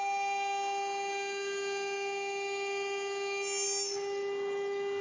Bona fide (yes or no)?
yes